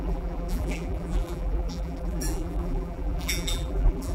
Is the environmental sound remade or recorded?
remade